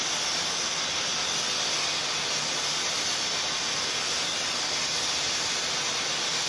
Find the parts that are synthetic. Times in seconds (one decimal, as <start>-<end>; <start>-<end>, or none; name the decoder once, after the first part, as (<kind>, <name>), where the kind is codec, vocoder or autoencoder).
none